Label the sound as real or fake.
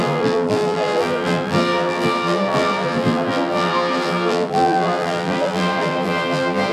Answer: fake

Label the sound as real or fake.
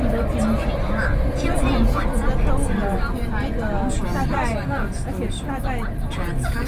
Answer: real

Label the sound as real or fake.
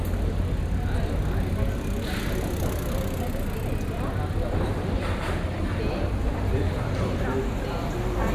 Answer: real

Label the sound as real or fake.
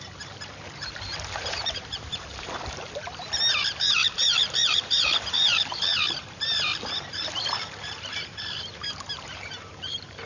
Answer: fake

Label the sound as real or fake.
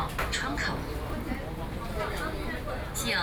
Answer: real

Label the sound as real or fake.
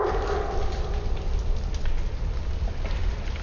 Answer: real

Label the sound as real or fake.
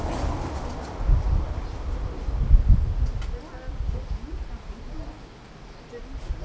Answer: real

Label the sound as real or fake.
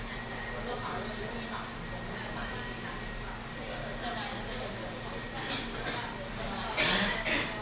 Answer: real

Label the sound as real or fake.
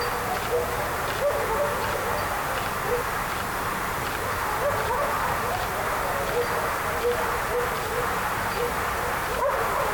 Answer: real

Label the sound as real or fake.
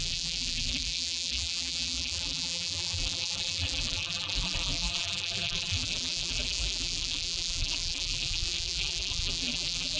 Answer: fake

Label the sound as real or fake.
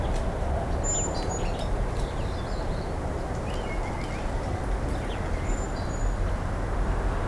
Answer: real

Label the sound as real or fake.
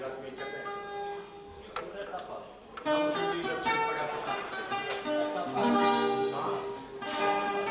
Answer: real